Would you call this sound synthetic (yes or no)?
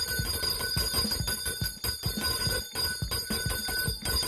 no